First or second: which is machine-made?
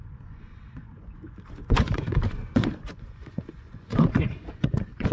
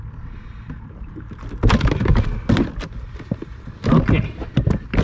first